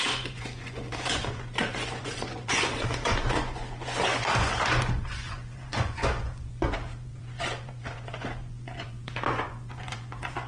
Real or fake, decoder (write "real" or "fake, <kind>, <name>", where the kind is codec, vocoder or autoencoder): fake, vocoder, Vocos